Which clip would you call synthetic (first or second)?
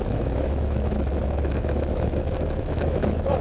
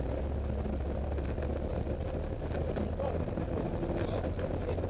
first